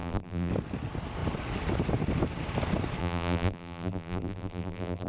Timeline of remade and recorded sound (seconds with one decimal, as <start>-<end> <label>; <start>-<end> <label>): 0.0-0.5 remade; 0.5-3.0 recorded; 3.0-5.1 remade